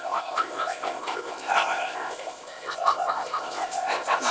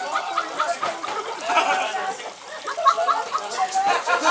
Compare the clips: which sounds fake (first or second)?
first